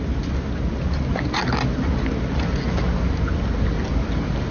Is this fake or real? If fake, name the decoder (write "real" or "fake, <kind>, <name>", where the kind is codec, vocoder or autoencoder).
real